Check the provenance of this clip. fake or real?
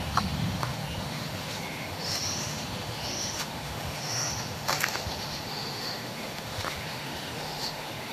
fake